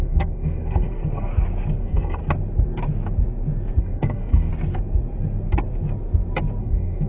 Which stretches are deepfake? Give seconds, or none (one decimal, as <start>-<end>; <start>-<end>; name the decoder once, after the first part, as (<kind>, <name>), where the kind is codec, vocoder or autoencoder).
0.0-1.3 (codec, SNAC); 1.8-2.2; 3.8-4.5; 6.6-7.1